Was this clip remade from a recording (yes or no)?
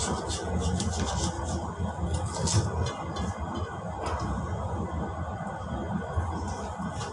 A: no